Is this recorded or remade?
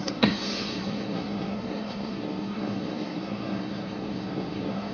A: remade